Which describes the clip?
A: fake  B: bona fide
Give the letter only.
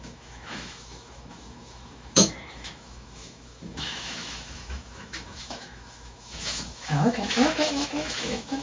A